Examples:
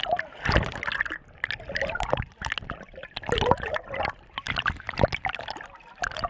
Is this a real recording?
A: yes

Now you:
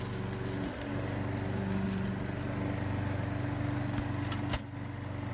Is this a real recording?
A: yes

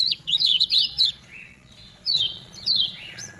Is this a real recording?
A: no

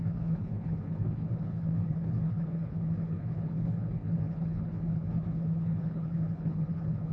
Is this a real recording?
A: no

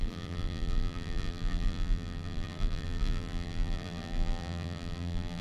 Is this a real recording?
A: no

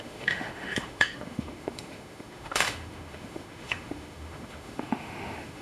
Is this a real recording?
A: no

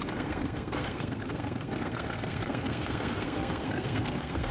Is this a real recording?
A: no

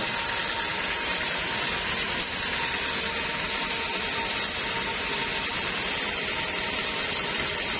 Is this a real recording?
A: yes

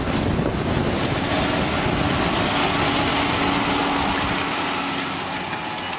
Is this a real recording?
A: yes